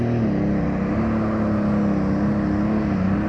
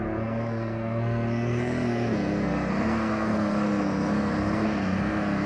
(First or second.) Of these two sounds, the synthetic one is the second